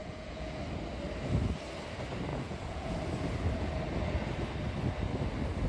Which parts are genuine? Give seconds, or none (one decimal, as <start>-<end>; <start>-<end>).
0.6-2.3; 2.9-5.7